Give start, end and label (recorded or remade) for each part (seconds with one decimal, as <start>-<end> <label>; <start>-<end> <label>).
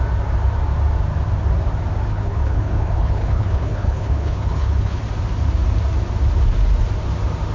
0.0-2.1 recorded; 2.1-5.0 remade; 5.0-7.5 recorded